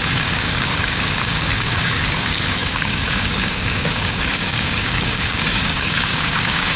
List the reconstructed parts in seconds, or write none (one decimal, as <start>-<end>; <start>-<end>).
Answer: 0.0-6.8

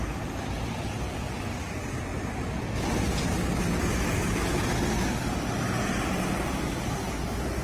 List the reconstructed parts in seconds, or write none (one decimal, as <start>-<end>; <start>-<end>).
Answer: none

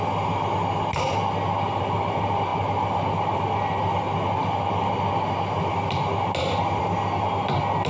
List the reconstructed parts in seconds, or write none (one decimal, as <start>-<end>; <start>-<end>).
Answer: none